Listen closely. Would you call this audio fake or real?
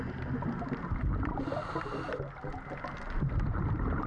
real